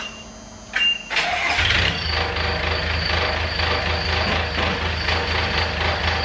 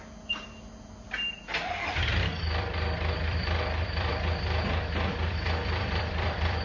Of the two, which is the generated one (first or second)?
second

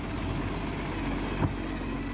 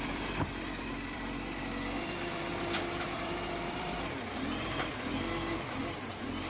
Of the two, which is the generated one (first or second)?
second